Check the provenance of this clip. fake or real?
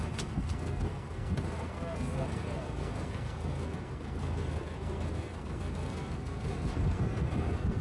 fake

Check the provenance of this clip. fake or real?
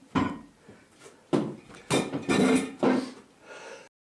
real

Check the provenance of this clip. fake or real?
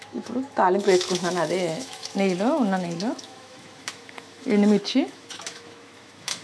fake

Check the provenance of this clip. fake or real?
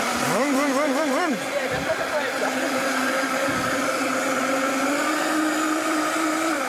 fake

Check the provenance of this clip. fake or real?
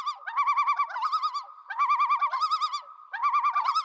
real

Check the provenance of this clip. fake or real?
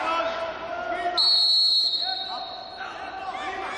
real